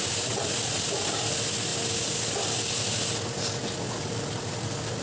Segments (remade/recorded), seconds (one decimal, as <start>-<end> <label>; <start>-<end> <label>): 0.0-5.0 recorded